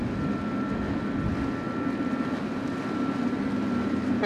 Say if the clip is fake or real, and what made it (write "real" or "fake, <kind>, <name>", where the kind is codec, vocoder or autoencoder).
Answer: real